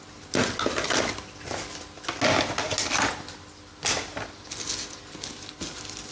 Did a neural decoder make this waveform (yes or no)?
no